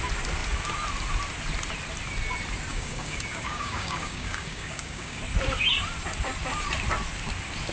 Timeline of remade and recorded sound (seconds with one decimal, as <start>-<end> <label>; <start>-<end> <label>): 0.0-2.7 recorded; 2.7-5.2 remade; 5.2-7.7 recorded